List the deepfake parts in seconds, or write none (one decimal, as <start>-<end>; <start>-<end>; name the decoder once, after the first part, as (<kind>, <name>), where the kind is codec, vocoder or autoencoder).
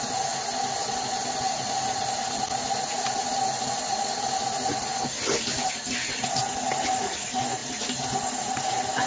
none